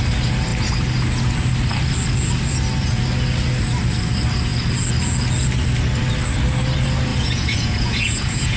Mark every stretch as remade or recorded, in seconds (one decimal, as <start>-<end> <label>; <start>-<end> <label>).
0.0-7.1 recorded; 7.1-8.6 remade